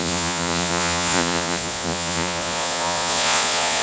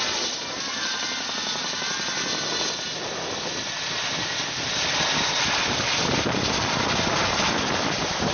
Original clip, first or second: second